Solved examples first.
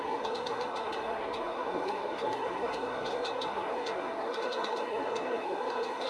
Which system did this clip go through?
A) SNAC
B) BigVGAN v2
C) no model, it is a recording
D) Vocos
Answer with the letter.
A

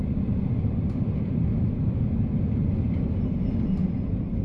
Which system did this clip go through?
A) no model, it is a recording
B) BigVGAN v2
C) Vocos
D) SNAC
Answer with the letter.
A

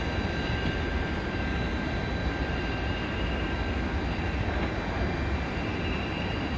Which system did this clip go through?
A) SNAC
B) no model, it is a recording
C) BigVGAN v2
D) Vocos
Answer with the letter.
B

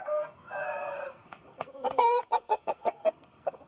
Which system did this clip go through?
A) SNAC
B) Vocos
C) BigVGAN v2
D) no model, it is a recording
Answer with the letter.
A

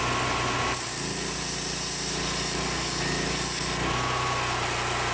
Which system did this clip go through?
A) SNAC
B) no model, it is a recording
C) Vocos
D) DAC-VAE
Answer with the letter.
B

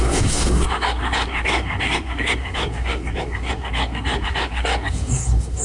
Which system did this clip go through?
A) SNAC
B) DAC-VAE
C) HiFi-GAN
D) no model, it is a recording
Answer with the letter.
A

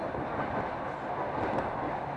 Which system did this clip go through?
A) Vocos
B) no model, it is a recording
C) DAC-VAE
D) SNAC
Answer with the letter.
B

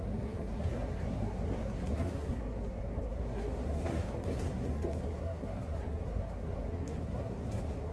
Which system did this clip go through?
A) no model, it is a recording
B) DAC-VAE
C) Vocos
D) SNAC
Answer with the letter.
D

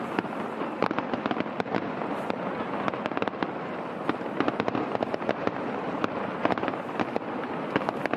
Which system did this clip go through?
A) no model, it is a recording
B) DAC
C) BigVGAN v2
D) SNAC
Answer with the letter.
A